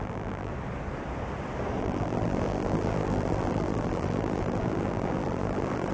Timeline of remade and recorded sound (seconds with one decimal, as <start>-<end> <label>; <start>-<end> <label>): 0.0-0.5 remade; 0.5-1.8 recorded; 1.8-5.9 remade